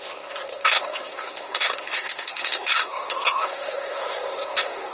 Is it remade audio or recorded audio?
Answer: remade